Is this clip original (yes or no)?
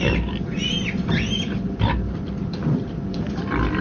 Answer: no